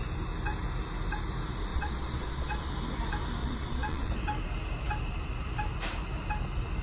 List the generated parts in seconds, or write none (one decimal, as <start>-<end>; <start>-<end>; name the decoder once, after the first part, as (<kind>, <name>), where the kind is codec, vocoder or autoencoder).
1.7-2.7 (vocoder, Vocos); 3.4-4.1